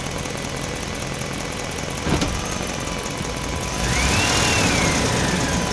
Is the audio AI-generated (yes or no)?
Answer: no